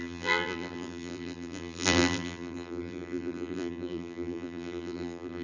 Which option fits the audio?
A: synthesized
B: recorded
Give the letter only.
A